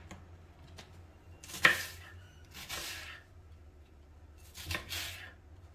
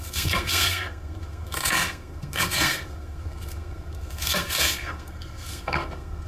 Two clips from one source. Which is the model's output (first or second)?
second